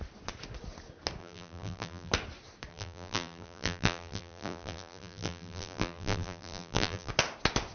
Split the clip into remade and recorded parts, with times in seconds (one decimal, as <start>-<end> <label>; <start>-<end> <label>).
0.0-1.2 recorded; 1.2-2.1 remade; 2.1-2.7 recorded; 2.7-7.1 remade; 7.1-7.7 recorded